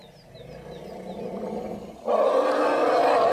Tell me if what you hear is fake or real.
real